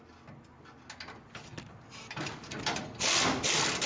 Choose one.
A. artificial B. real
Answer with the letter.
B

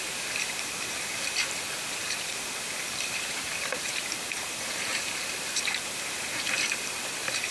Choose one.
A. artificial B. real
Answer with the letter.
A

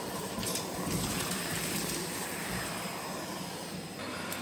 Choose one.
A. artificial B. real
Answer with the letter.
A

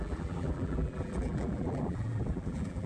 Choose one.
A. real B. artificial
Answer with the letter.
B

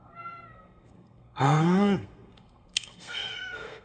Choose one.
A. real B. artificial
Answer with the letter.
B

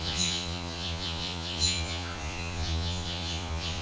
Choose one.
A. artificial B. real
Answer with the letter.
A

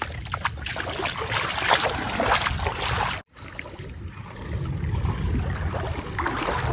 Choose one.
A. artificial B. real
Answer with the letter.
B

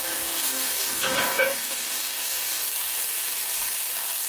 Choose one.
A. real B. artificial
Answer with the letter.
B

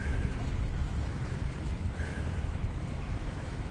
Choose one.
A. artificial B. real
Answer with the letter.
A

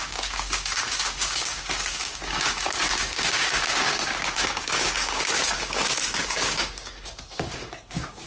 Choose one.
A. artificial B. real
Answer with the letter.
A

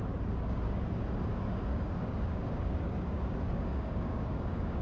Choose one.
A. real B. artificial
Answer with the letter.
B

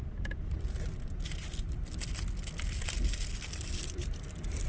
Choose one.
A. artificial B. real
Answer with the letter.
B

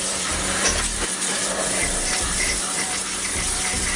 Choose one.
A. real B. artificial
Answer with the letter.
B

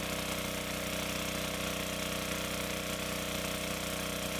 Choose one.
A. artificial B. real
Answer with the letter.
B